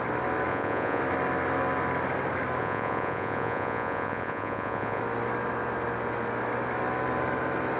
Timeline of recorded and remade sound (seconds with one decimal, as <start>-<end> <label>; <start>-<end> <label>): 0.0-0.5 recorded; 0.5-1.0 remade; 1.0-2.6 recorded; 2.6-5.0 remade; 5.0-7.8 recorded